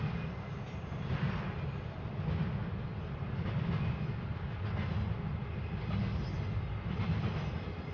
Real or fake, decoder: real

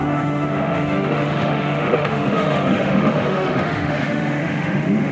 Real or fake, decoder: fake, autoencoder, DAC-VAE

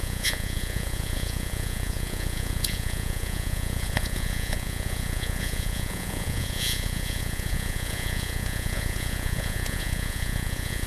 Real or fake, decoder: fake, vocoder, Vocos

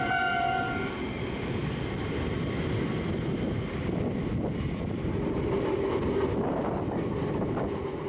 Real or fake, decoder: real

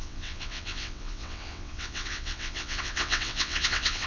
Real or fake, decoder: fake, vocoder, WaveNeXt